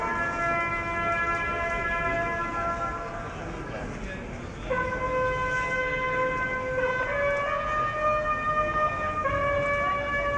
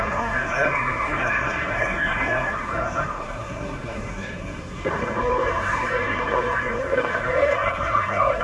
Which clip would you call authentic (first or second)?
first